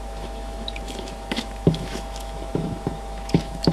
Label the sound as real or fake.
fake